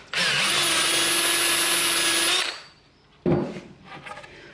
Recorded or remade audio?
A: recorded